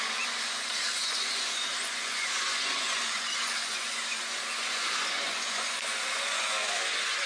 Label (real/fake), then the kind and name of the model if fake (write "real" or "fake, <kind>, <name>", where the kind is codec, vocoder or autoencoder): fake, vocoder, Vocos